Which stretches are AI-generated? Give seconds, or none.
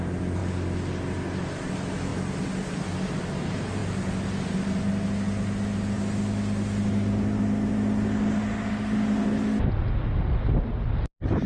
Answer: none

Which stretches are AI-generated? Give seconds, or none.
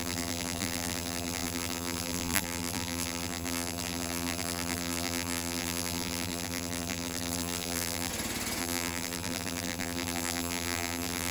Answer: 0.0-8.1 (vocoder, BigVGAN v2); 8.6-11.3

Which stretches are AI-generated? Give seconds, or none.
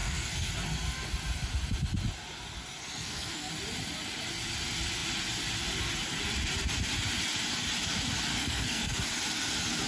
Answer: 0.0-0.5 (codec, SNAC); 2.8-3.5; 8.3-9.0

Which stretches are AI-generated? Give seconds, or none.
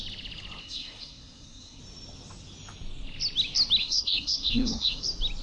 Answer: 0.6-1.8 (codec, SNAC); 3.8-5.0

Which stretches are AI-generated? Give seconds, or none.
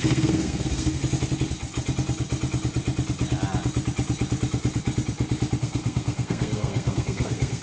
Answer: 0.0-1.0 (codec, SNAC); 5.6-7.6